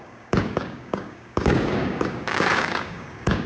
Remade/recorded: remade